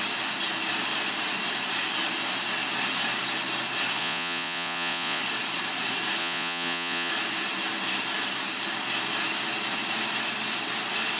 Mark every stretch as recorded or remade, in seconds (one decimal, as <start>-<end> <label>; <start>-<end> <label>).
0.0-4.0 recorded; 4.0-5.2 remade; 5.2-6.2 recorded; 6.2-7.1 remade; 7.1-11.2 recorded